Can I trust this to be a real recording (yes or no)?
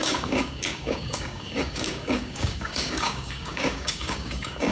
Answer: no